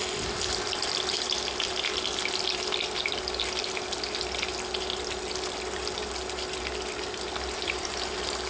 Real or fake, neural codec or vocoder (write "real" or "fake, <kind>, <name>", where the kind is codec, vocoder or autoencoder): real